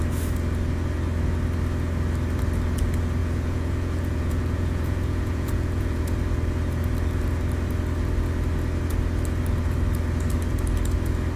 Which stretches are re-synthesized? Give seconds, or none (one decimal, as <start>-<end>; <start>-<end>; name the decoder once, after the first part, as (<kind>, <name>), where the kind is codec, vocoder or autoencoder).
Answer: 3.2-6.0 (vocoder, Vocos)